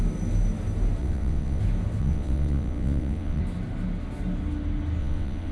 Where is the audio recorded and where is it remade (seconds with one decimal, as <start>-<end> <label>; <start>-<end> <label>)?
0.0-1.0 recorded; 1.0-1.6 remade; 1.6-2.0 recorded; 2.0-3.4 remade; 3.4-5.0 recorded; 5.0-5.5 remade